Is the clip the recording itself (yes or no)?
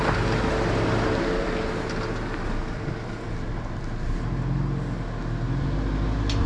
yes